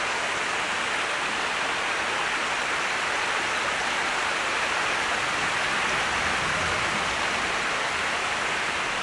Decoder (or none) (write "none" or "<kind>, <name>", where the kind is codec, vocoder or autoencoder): none